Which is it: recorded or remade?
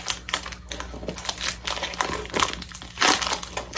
recorded